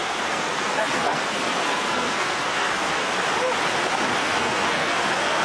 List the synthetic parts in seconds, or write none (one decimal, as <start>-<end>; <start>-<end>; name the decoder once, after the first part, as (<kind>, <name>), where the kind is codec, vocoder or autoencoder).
0.0-3.1 (codec, SNAC); 4.2-5.4